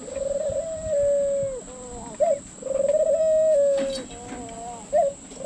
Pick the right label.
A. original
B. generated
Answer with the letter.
A